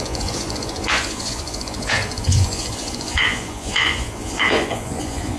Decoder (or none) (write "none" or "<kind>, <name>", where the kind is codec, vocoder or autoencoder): vocoder, Vocos